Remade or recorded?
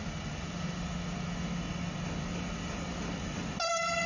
recorded